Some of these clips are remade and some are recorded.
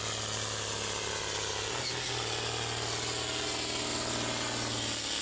recorded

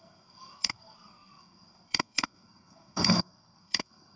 remade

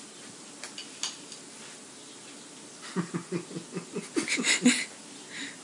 recorded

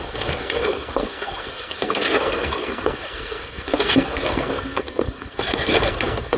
remade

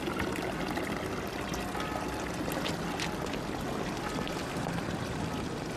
recorded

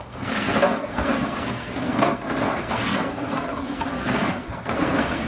remade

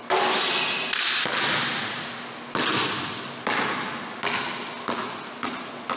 recorded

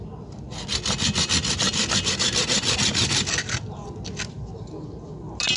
recorded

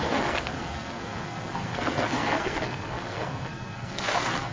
remade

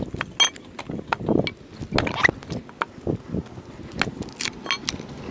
recorded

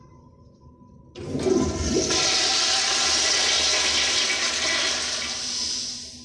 recorded